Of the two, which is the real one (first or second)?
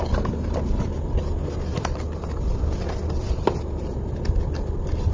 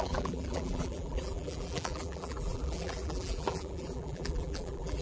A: first